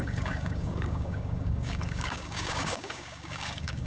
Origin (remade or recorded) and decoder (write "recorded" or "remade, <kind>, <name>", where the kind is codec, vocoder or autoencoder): remade, codec, DAC